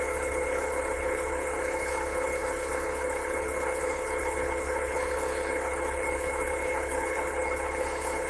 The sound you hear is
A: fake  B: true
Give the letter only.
A